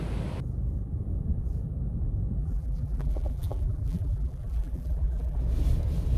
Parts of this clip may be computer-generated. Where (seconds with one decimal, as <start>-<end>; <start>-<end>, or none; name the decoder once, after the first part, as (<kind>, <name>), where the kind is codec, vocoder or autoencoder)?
2.4-5.4 (vocoder, BigVGAN v2)